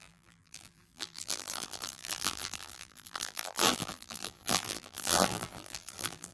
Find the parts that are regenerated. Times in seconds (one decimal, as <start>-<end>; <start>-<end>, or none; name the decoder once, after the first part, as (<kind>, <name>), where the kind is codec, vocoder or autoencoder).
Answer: 0.0-6.3 (vocoder, BigVGAN v2)